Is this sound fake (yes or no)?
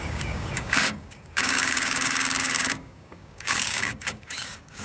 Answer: yes